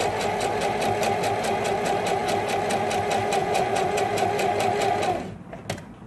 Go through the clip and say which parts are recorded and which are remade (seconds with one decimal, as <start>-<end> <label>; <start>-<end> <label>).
0.0-3.4 recorded; 3.4-4.0 remade; 4.0-6.1 recorded